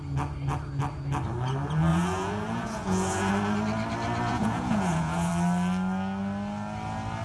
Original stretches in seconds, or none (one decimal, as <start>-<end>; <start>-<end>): 0.0-1.9; 3.3-4.3; 5.3-7.2